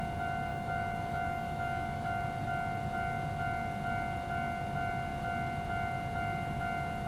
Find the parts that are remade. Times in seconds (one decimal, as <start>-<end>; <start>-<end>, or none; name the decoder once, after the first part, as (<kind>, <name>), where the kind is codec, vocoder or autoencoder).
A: 0.5-2.2 (autoencoder, DAC-VAE)